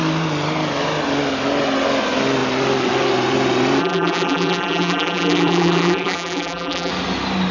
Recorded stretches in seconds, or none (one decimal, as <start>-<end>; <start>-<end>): 0.0-3.8; 6.9-7.5